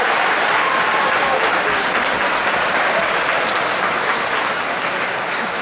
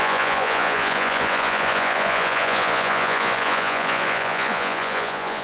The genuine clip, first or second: first